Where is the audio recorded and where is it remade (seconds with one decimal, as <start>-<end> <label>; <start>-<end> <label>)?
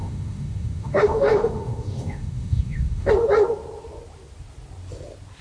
0.0-3.1 remade; 3.1-5.4 recorded